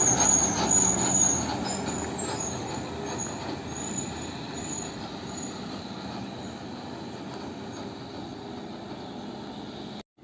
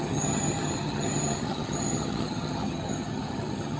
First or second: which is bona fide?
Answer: first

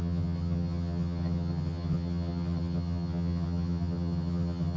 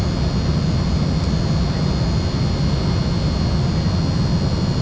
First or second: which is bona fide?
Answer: second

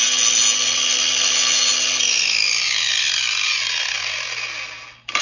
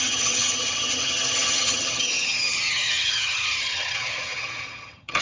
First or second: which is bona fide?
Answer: first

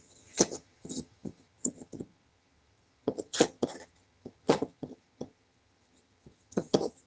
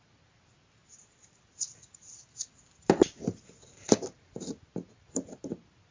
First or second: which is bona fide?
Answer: second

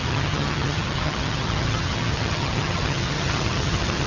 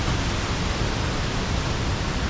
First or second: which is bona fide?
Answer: second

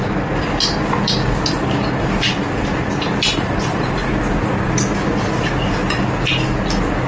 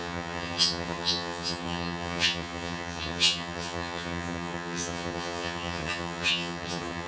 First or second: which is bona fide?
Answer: first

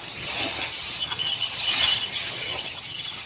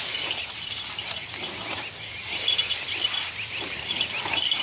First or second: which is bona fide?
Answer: second